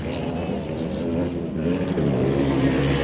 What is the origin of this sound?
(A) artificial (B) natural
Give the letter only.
B